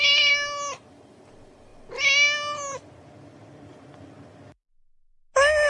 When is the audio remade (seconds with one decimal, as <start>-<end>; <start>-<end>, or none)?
none